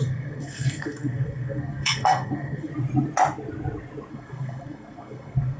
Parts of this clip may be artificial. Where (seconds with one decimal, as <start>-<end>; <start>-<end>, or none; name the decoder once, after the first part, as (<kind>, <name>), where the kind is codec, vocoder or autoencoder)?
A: 0.0-2.7 (codec, SNAC); 4.1-5.6